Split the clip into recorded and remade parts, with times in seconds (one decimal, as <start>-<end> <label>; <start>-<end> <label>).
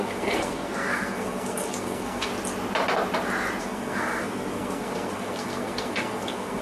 0.0-2.3 remade; 2.3-3.6 recorded; 3.6-6.6 remade